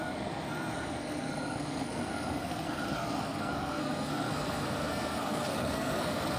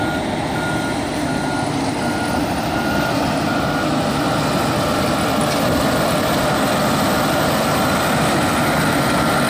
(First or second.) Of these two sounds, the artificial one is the first